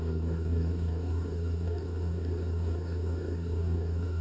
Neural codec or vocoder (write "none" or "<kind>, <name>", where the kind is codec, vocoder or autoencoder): codec, DAC